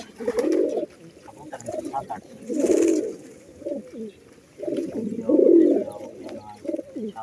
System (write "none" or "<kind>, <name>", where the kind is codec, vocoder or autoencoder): none